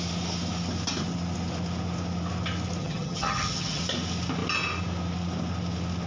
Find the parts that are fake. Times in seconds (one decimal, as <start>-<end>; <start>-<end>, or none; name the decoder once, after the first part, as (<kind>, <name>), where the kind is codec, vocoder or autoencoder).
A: 2.8-3.8 (vocoder, HiFi-GAN)